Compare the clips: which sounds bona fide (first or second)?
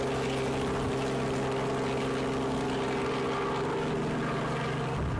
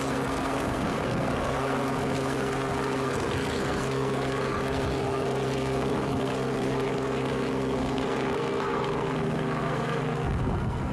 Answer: first